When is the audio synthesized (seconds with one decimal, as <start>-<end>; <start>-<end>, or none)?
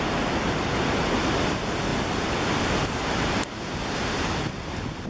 1.9-2.9